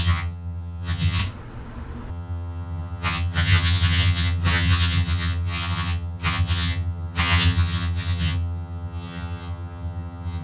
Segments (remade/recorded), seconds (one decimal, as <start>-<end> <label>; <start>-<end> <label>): 0.0-1.2 remade; 1.2-2.1 recorded; 2.1-10.4 remade